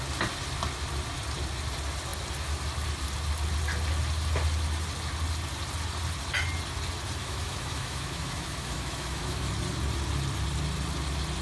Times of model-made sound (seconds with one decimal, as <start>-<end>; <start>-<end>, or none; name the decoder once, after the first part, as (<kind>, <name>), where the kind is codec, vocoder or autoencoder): 7.2-9.5 (autoencoder, DAC-VAE)